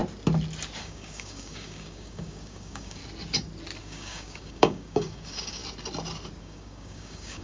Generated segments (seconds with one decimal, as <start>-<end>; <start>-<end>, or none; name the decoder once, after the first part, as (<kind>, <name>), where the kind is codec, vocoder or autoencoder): 0.8-3.0 (codec, DAC); 3.8-5.6; 6.4-7.4